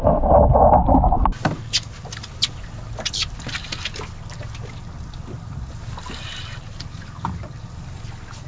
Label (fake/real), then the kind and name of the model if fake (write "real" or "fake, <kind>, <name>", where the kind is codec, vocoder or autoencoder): real